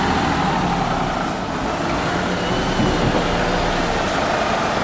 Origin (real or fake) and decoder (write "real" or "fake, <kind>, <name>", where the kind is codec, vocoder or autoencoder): real